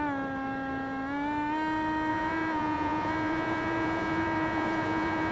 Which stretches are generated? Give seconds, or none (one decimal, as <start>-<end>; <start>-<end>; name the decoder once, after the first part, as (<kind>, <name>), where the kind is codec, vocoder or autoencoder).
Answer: 2.1-5.3 (vocoder, Vocos)